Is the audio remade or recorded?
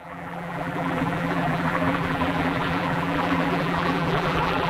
remade